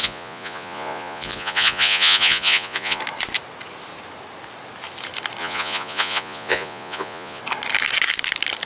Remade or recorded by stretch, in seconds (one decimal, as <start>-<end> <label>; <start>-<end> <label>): 0.0-3.0 remade; 3.0-5.4 recorded; 5.4-7.4 remade; 7.4-8.7 recorded